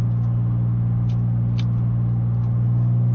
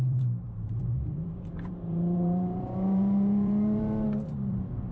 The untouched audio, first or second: first